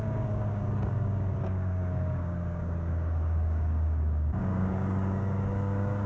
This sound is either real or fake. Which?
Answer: fake